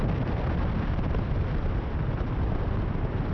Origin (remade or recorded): recorded